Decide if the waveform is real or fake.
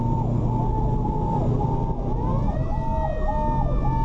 real